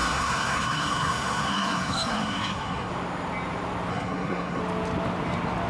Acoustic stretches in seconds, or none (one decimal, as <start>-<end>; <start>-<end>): 2.9-3.9; 4.6-5.7